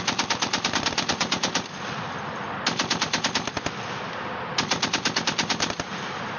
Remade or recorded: remade